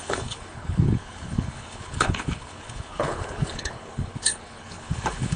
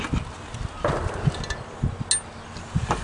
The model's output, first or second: first